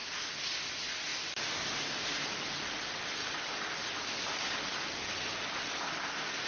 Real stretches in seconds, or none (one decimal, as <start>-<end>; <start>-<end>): 0.0-6.5